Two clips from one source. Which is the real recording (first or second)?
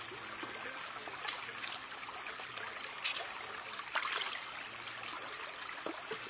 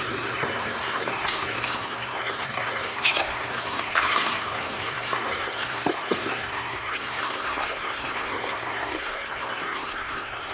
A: first